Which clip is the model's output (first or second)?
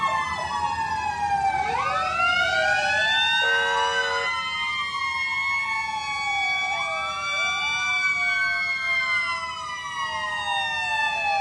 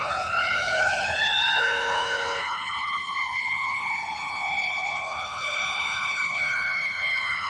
second